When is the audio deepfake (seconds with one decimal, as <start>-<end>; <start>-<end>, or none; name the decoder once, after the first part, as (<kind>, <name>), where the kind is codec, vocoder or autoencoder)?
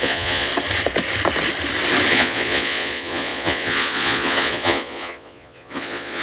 0.0-0.5 (vocoder, Vocos); 2.1-6.2